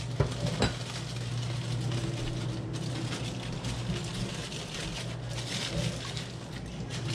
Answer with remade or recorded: recorded